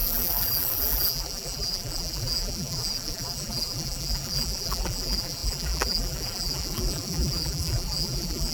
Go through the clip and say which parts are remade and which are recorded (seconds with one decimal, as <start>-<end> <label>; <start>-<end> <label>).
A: 0.0-8.5 remade